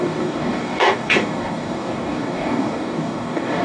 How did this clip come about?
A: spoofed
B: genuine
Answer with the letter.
A